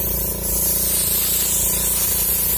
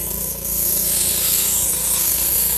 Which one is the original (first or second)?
first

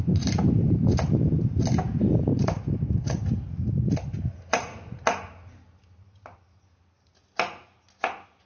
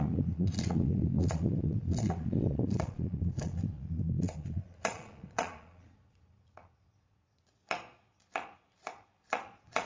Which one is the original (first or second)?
first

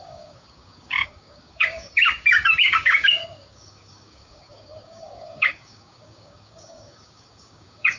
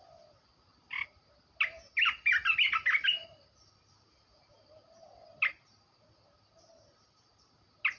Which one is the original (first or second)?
second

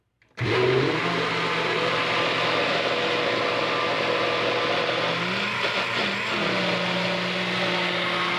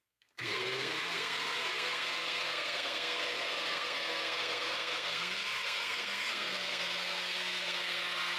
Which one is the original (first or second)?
first